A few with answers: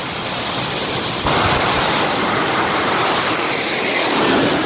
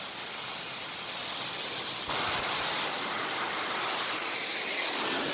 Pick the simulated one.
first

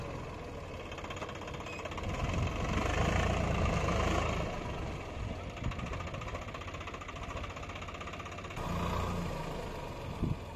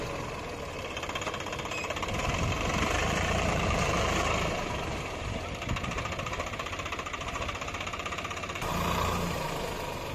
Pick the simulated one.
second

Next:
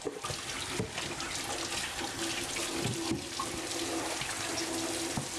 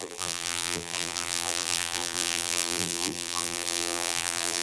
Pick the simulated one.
second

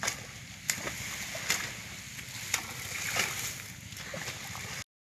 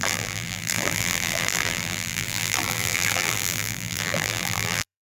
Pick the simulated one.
second